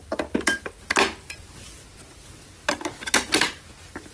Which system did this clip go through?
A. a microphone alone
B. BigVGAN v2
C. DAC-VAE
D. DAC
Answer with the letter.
A